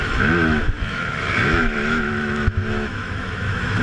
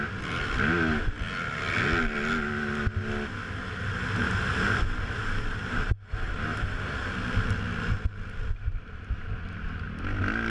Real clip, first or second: second